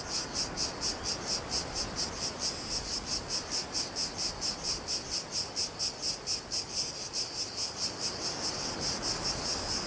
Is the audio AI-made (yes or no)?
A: no